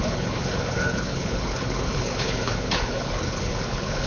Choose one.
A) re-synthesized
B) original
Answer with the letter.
A